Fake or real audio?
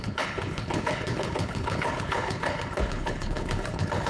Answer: fake